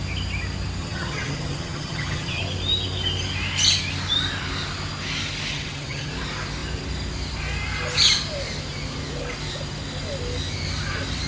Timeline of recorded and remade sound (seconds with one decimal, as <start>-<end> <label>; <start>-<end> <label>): 0.0-0.8 recorded; 0.8-2.4 remade; 2.4-5.5 recorded; 5.5-6.1 remade; 6.1-11.3 recorded